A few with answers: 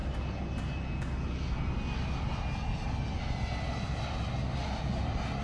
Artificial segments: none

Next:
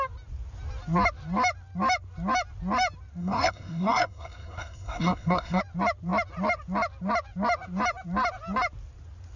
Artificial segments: 3.2-5.6

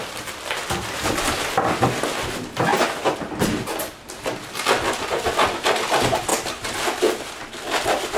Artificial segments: 6.3-7.3

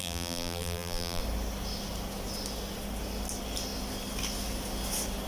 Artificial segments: 0.0-1.2